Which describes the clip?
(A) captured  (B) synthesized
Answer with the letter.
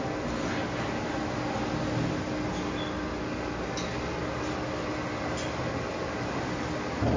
A